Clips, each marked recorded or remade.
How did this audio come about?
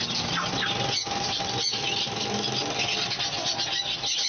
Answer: recorded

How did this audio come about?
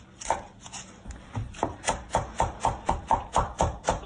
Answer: remade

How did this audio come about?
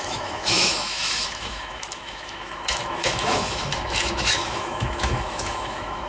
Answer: remade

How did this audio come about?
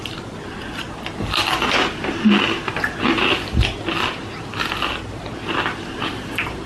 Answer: recorded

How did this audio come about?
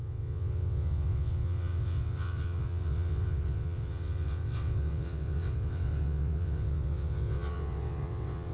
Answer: remade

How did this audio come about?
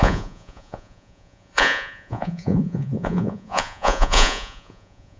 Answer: remade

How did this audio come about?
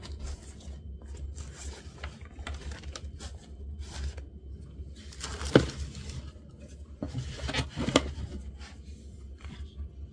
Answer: recorded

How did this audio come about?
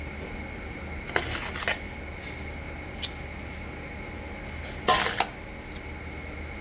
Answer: recorded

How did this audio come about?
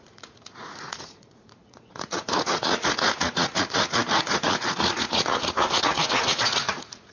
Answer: remade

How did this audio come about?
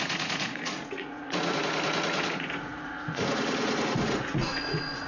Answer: remade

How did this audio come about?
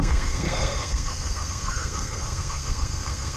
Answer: remade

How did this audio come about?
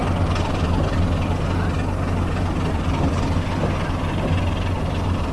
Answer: recorded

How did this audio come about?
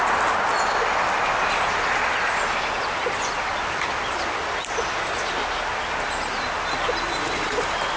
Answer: recorded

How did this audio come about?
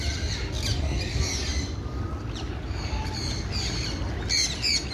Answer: recorded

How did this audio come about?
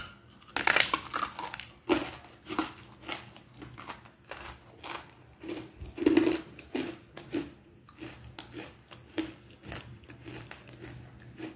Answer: recorded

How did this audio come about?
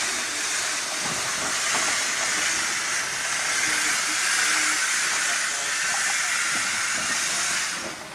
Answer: recorded